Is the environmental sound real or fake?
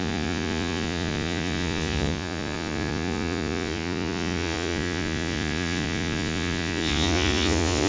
fake